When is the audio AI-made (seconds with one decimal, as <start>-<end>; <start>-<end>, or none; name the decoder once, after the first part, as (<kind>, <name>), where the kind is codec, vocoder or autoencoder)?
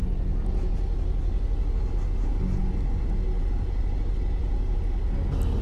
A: none